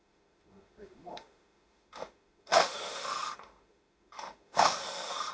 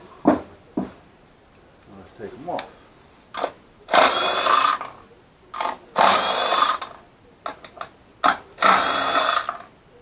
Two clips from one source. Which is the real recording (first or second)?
second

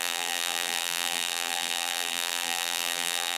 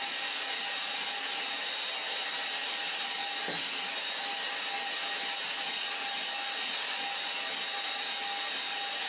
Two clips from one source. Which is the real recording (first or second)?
second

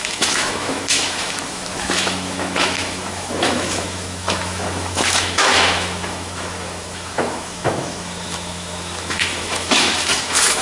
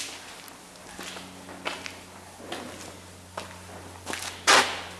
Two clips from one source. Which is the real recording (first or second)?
second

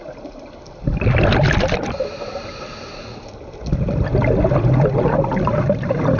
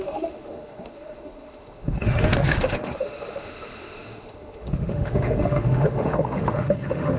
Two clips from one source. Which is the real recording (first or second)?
first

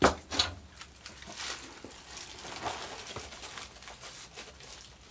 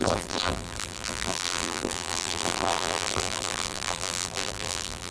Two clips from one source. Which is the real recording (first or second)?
first